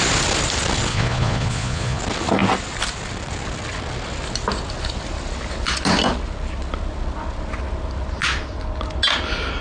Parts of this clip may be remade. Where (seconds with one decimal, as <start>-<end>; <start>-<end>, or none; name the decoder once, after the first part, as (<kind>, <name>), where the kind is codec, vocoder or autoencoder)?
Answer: 0.9-2.0 (vocoder, Vocos)